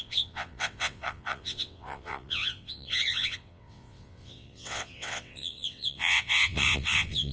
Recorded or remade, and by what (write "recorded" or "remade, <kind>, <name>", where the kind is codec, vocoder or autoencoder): remade, vocoder, WaveNeXt